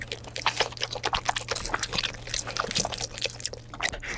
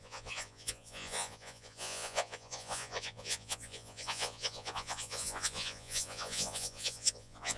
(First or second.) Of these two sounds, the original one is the first